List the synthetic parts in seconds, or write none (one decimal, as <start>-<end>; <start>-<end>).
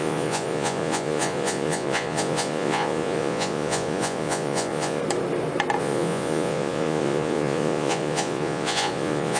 0.0-5.0; 5.8-9.4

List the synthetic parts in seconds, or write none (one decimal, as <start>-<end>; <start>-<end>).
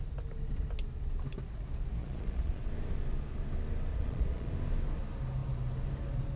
2.0-2.7; 3.9-4.5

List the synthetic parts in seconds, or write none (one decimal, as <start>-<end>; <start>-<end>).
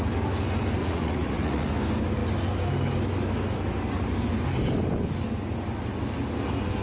0.8-1.7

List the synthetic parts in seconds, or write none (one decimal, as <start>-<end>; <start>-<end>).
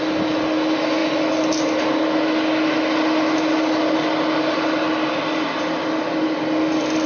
none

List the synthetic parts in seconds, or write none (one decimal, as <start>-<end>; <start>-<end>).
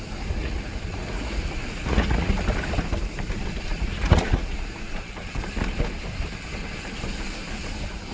0.4-2.3; 3.7-5.0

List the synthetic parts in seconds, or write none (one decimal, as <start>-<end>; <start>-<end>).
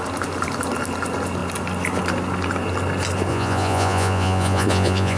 3.3-5.2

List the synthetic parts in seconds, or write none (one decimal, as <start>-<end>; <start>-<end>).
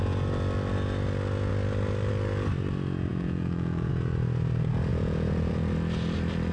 3.1-3.9; 4.9-5.5